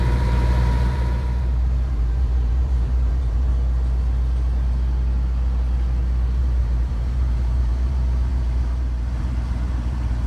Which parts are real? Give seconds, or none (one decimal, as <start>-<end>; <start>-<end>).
3.5-6.4

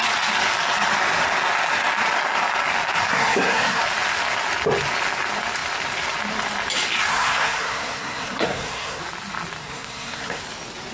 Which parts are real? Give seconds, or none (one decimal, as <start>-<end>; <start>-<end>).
0.0-3.1; 3.8-7.1; 9.0-9.6; 10.4-10.9

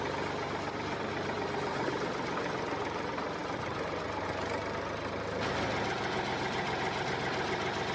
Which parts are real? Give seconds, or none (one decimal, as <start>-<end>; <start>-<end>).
0.0-7.9

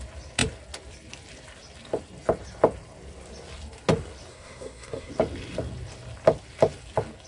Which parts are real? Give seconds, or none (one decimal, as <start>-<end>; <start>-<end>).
0.0-4.3; 5.1-7.3